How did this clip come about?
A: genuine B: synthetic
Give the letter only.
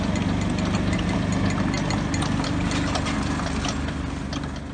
A